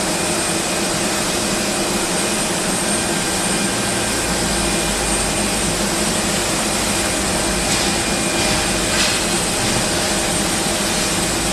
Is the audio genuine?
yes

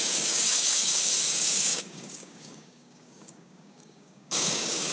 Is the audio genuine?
no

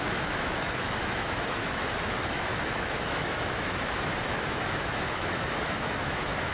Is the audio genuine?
no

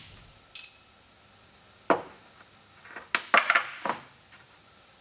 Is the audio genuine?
yes